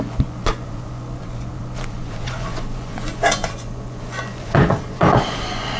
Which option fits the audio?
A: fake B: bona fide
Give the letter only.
A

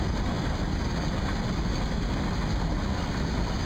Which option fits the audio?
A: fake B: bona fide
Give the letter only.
B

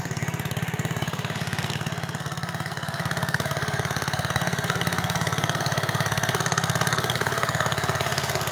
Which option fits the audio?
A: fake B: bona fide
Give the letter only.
A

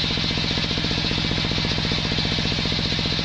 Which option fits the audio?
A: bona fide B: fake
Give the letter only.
A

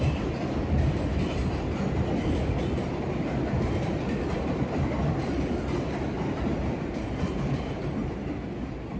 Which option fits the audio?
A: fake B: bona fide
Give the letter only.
B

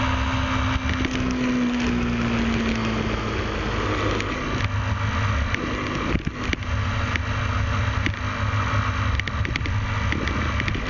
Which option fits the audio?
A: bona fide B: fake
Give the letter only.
A